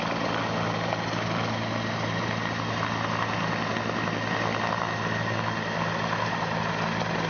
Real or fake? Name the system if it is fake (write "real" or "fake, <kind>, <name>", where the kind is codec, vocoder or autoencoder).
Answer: real